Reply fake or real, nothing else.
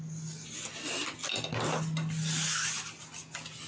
real